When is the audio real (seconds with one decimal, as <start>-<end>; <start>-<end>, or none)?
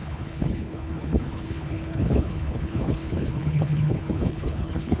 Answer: none